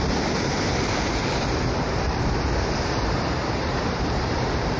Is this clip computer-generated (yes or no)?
yes